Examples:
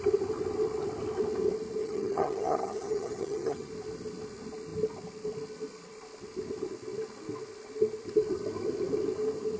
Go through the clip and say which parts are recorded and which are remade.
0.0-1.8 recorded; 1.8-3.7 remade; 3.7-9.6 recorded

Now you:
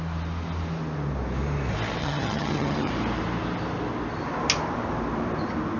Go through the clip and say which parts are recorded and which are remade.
0.0-2.0 recorded; 2.0-2.9 remade; 2.9-5.8 recorded

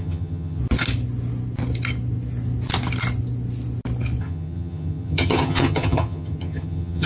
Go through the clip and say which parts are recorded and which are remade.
0.0-0.6 remade; 0.6-4.2 recorded; 4.2-7.1 remade

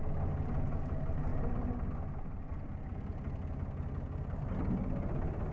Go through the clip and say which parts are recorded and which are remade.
0.0-5.5 recorded